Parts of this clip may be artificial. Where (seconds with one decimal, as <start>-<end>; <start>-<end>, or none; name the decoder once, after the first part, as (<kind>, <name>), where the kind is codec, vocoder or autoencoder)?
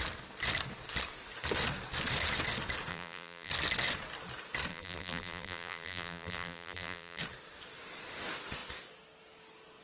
2.9-3.5 (vocoder, BigVGAN v2); 4.7-7.2